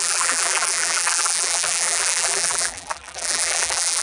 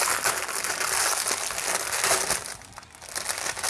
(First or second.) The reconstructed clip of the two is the first